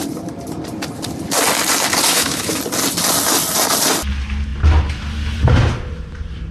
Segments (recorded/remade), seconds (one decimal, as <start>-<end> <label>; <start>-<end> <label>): 0.0-2.1 recorded; 2.1-2.6 remade; 2.6-6.5 recorded